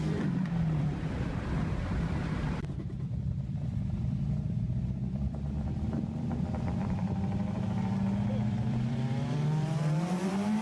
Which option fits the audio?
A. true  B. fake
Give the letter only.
B